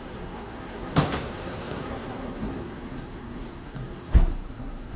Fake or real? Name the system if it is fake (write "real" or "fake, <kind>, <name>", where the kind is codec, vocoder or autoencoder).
fake, codec, SNAC